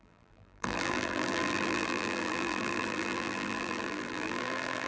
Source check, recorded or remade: remade